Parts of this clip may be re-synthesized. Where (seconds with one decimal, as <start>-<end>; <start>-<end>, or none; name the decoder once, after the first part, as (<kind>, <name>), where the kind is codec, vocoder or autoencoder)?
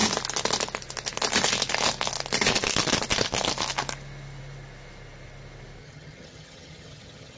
5.8-7.4 (vocoder, HiFi-GAN)